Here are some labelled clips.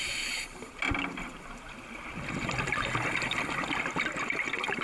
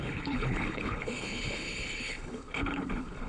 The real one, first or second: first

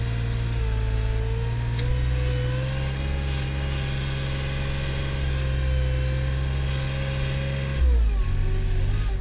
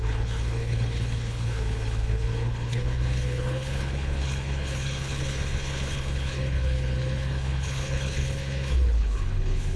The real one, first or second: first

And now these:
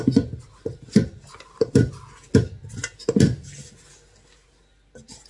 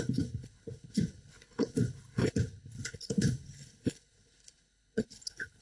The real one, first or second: first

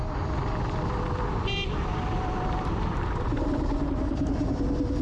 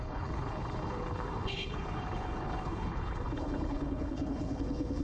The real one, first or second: first